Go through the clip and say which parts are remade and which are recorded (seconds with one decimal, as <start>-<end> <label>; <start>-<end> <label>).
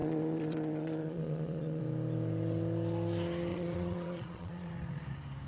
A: 0.0-1.8 remade; 1.8-3.5 recorded; 3.5-4.7 remade; 4.7-5.5 recorded